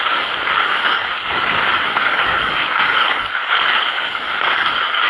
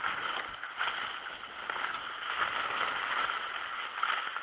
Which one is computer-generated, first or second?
first